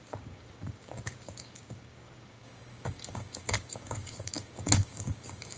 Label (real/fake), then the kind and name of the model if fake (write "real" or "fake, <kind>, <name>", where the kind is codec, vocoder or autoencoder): fake, codec, DAC